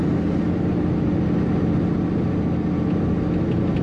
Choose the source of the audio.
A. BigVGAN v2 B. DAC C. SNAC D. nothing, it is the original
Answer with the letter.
D